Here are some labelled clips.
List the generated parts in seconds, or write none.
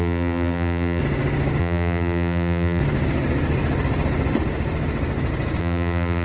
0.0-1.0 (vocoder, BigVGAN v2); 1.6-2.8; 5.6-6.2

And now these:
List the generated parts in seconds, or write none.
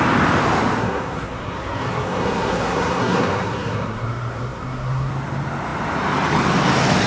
0.8-5.1 (codec, SNAC)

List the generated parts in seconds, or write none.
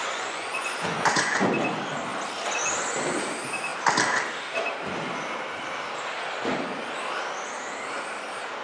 0.0-1.5 (vocoder, Vocos)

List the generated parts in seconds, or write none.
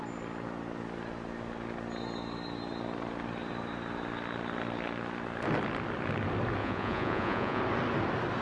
6.6-7.6 (vocoder, Vocos)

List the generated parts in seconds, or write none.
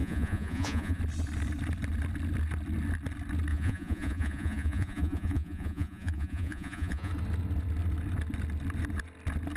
0.0-1.0 (vocoder, Vocos); 3.5-7.1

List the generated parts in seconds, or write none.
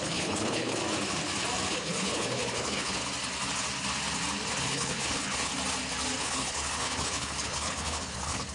0.0-0.8 (codec, HILCodec); 1.7-3.0; 4.6-5.5; 6.2-8.5